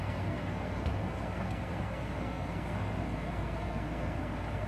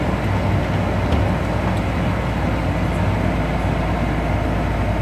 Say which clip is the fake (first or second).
first